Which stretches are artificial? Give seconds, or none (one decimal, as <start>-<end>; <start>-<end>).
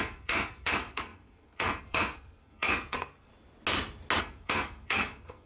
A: 0.0-3.3; 4.2-5.5